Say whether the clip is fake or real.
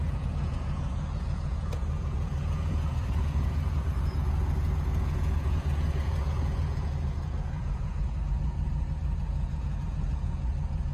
fake